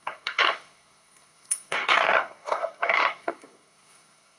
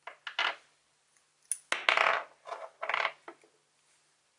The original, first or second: second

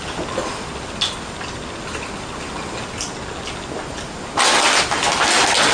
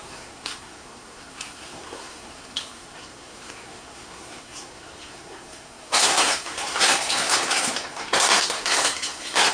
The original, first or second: first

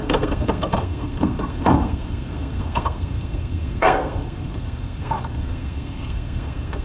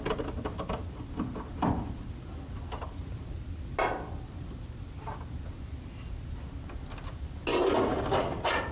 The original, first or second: second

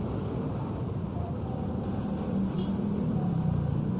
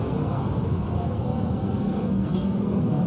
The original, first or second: first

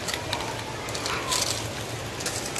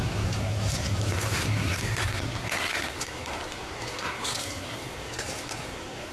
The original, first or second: first